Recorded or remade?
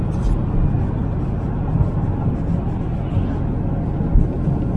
recorded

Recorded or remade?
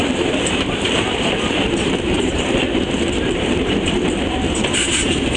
remade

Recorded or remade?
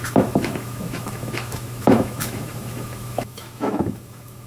remade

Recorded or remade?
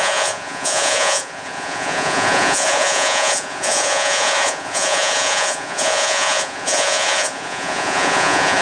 remade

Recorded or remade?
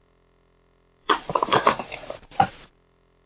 remade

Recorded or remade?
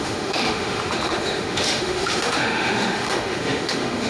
remade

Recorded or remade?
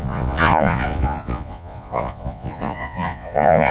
remade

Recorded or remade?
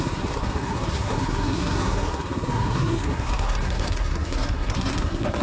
remade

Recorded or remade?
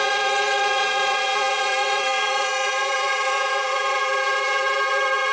remade